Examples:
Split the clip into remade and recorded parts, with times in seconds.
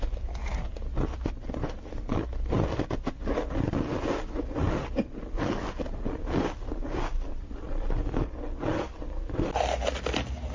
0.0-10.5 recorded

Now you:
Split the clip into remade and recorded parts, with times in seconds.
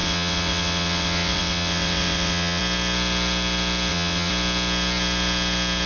0.0-2.6 remade; 2.6-3.9 recorded; 3.9-4.3 remade; 4.3-5.9 recorded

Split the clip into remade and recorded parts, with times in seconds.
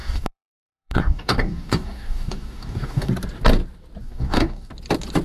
0.0-3.1 remade; 3.1-4.0 recorded; 4.0-4.7 remade; 4.7-5.2 recorded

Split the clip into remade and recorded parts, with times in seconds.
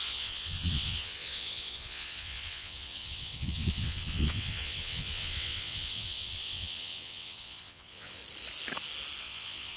0.0-8.2 remade; 8.2-9.2 recorded; 9.2-9.8 remade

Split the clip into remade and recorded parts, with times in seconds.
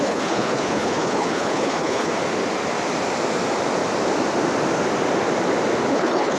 0.0-2.1 remade; 2.1-5.9 recorded; 5.9-6.4 remade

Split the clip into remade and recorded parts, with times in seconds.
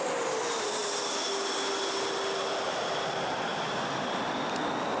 0.0-5.0 recorded